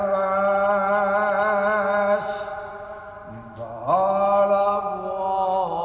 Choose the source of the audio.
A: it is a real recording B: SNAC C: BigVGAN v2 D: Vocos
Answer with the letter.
A